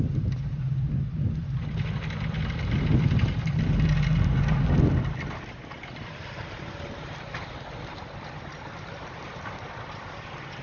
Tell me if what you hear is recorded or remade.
recorded